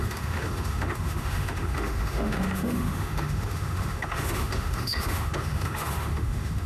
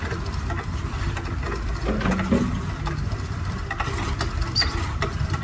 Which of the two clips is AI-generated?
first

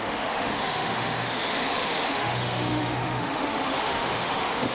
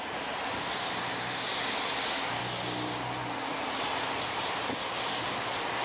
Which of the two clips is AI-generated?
first